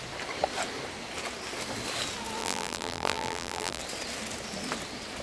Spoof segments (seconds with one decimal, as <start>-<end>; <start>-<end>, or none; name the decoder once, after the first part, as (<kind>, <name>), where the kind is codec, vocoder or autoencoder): 2.4-3.8 (vocoder, BigVGAN v2)